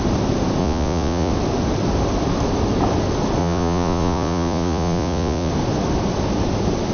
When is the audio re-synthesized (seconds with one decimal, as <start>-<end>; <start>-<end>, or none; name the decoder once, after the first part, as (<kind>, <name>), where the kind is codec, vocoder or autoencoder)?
0.6-1.3 (vocoder, Vocos); 3.4-5.5